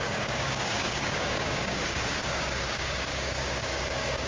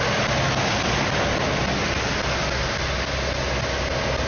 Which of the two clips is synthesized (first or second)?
first